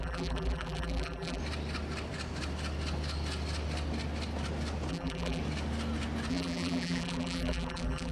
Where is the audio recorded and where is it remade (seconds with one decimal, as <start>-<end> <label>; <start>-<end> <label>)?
0.0-1.4 remade; 1.4-4.9 recorded; 4.9-5.4 remade; 5.4-6.3 recorded; 6.3-8.1 remade